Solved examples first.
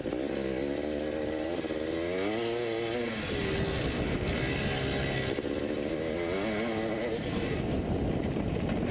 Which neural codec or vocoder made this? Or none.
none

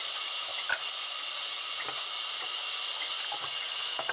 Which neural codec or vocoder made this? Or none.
none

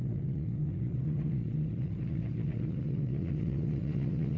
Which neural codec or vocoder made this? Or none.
vocoder, Vocos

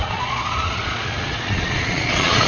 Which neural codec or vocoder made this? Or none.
vocoder, Vocos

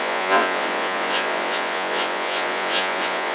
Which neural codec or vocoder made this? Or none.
vocoder, Vocos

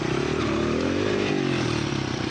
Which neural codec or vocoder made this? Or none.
none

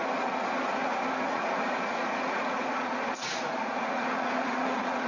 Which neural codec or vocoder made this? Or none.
vocoder, Vocos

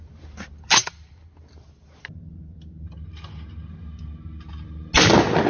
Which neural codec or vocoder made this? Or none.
none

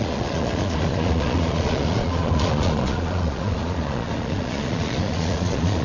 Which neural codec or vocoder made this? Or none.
vocoder, Vocos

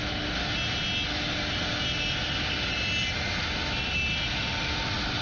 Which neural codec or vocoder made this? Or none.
none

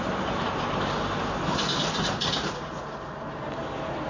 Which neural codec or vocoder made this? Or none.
none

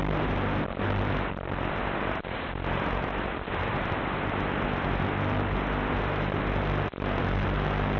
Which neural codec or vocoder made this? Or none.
none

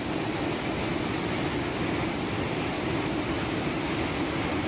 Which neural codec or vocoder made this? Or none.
none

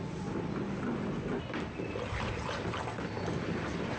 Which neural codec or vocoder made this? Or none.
none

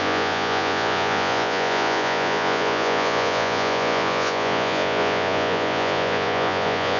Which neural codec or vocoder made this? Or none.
vocoder, Vocos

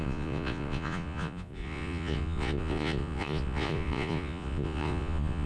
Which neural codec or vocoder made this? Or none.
vocoder, Vocos